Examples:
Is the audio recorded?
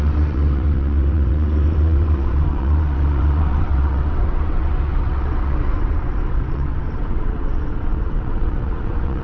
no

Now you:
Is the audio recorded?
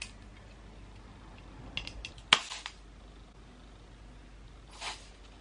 yes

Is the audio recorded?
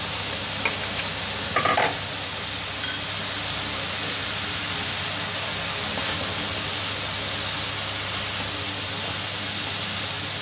yes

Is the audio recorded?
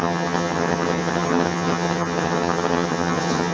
no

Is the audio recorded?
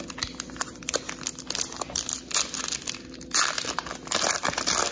yes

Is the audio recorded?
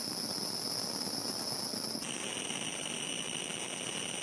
yes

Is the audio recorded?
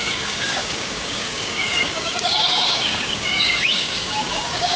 no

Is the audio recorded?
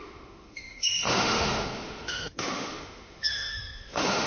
no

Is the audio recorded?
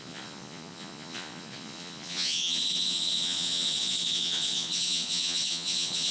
no